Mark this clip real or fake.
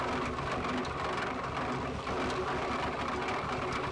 real